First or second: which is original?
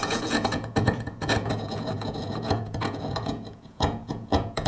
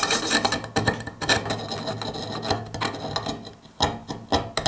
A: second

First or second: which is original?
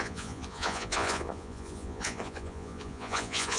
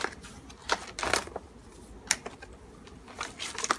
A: second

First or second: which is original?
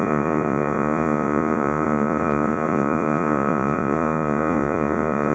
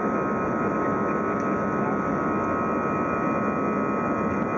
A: second